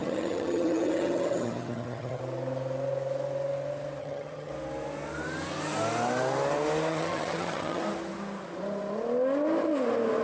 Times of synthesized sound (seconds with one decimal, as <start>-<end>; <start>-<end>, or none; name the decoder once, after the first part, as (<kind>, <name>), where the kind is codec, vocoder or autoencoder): 0.0-2.2 (vocoder, HiFi-GAN); 4.0-4.5; 6.9-7.8